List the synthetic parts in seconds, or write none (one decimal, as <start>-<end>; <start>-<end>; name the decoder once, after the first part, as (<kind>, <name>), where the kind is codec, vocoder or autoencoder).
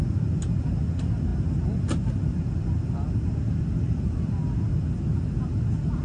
none